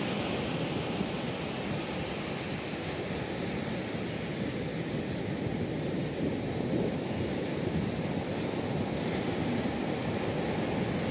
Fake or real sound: real